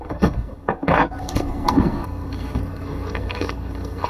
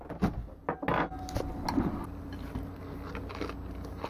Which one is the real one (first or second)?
second